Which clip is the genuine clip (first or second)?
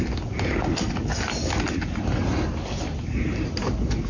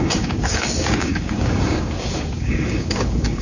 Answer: first